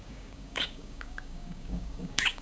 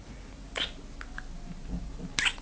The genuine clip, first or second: second